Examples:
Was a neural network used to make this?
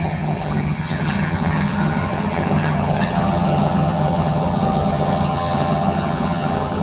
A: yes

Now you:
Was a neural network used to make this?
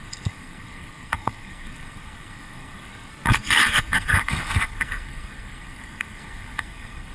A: yes